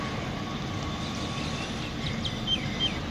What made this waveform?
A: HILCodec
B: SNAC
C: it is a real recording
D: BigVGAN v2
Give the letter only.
C